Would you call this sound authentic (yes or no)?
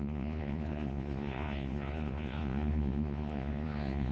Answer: no